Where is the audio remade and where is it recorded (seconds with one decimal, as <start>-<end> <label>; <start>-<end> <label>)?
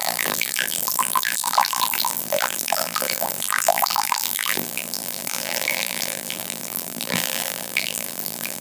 0.0-8.6 remade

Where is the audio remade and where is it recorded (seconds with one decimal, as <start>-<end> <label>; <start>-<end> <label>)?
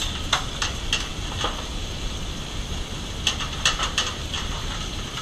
0.0-5.2 recorded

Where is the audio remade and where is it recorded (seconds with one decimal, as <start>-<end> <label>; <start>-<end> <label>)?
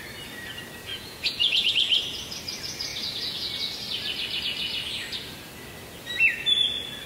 0.0-0.9 recorded; 0.9-1.7 remade; 1.7-7.1 recorded